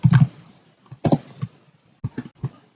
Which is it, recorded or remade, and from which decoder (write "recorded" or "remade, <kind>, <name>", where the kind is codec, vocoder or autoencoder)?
recorded